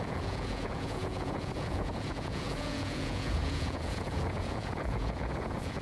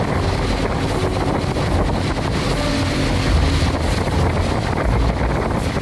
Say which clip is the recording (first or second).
second